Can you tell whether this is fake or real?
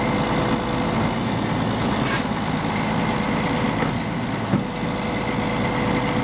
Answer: real